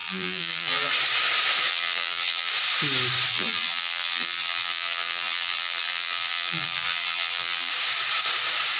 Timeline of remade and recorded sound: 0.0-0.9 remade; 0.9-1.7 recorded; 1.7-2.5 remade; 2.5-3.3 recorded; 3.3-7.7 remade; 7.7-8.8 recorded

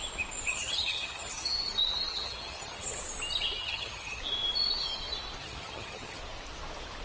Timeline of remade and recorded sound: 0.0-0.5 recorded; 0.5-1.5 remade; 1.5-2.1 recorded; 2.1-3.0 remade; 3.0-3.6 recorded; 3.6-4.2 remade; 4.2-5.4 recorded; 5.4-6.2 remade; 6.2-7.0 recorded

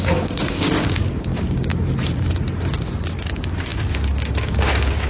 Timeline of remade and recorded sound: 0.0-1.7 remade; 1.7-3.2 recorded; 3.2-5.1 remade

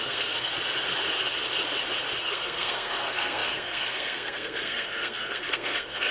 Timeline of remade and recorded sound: 0.0-0.5 remade; 0.5-2.2 recorded; 2.2-6.1 remade

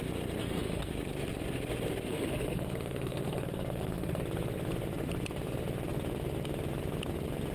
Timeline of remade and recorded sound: 0.0-0.4 recorded; 0.4-0.9 remade; 0.9-2.1 recorded; 2.1-4.2 remade; 4.2-7.5 recorded